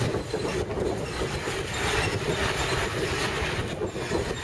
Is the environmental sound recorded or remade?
recorded